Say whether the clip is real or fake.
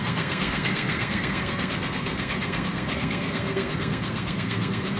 fake